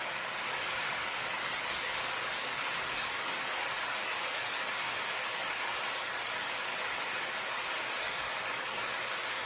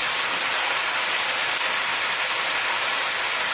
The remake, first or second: first